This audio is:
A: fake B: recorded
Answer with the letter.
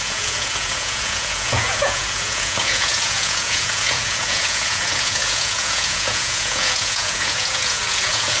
A